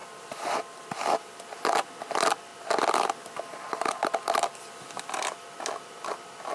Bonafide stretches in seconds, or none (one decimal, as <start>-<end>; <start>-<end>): 0.0-6.5